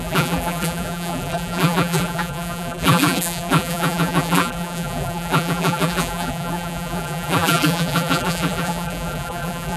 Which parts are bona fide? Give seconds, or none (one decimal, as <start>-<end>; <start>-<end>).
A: none